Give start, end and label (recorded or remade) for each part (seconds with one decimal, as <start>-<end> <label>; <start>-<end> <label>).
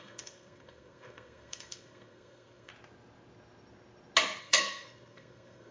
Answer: 0.0-2.7 remade; 2.7-4.4 recorded; 4.4-5.7 remade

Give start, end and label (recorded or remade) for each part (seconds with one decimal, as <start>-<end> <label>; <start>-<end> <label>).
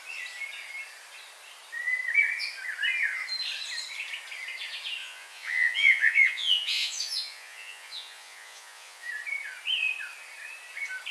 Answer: 0.0-5.0 recorded; 5.0-9.1 remade; 9.1-11.1 recorded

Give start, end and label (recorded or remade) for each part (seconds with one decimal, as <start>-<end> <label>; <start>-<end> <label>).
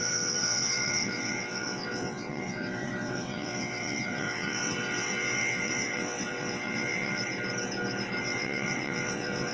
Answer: 0.0-7.2 remade; 7.2-8.2 recorded; 8.2-9.5 remade